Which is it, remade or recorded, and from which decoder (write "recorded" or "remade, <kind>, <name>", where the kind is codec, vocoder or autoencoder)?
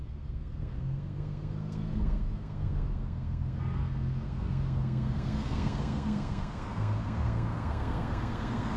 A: remade, codec, SNAC